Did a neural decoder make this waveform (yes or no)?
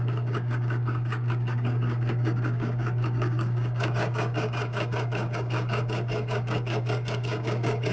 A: yes